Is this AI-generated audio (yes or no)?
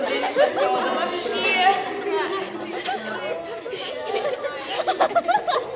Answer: no